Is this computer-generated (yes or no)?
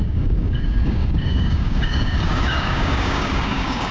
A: yes